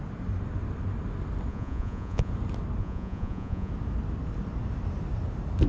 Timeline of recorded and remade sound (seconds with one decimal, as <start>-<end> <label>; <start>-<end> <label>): 0.0-1.5 recorded; 1.5-2.3 remade; 2.3-2.8 recorded; 2.8-3.7 remade; 3.7-5.7 recorded